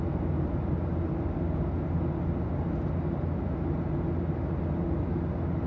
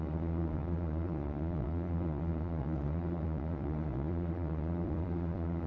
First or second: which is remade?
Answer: second